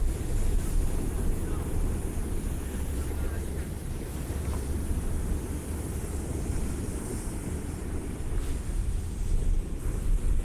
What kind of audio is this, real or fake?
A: real